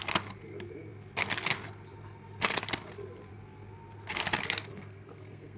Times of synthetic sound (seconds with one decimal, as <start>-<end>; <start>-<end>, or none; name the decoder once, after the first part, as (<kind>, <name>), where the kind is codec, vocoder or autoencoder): 4.7-5.6 (codec, SNAC)